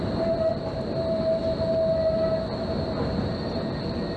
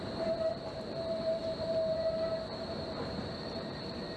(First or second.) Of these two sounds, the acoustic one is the first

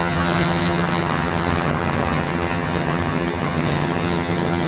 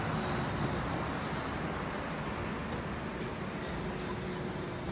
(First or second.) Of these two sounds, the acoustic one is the second